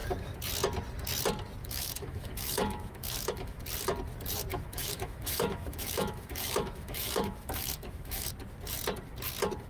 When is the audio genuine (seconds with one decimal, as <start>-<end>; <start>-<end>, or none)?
0.0-1.6; 3.6-4.5; 8.3-9.7